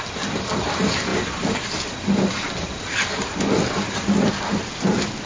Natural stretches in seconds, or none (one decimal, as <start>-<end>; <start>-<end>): 0.0-5.3

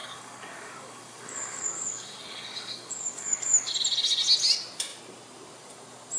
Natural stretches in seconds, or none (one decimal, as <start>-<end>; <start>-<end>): 3.7-6.2

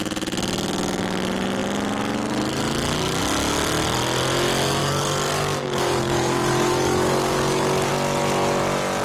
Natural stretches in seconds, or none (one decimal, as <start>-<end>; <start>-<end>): 0.0-4.8; 7.9-9.0

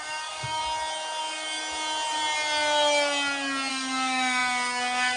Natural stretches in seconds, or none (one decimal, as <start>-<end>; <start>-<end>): 0.6-1.2; 1.6-3.7

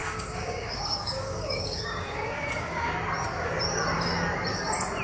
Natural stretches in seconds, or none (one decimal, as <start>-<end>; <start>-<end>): 2.9-5.0